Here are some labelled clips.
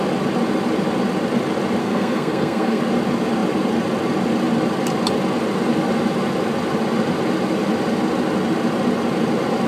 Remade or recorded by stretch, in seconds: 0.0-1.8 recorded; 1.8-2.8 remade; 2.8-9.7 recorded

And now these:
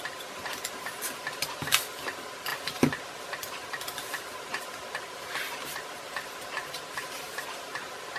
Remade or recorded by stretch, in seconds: 0.0-8.2 recorded

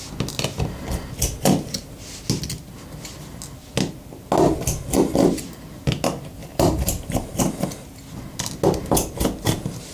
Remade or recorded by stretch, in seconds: 0.0-6.4 recorded; 6.4-7.4 remade; 7.4-9.9 recorded

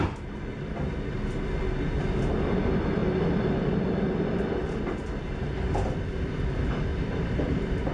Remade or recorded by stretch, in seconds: 0.0-6.9 recorded; 6.9-7.9 remade

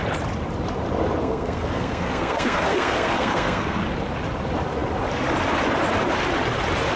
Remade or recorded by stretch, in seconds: 0.0-1.2 recorded; 1.2-3.8 remade; 3.8-7.0 recorded

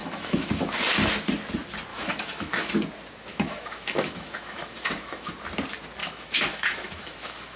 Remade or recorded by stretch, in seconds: 0.0-0.7 remade; 0.7-1.9 recorded; 1.9-2.7 remade; 2.7-3.3 recorded; 3.3-5.3 remade; 5.3-6.0 recorded; 6.0-7.6 remade

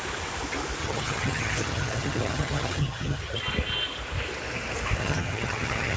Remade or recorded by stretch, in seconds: 0.0-0.8 recorded; 0.8-3.4 remade; 3.4-5.0 recorded; 5.0-6.0 remade

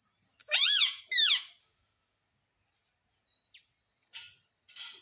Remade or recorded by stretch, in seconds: 0.0-0.4 recorded; 0.4-1.0 remade; 1.0-5.0 recorded